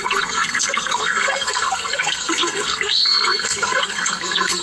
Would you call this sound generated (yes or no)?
yes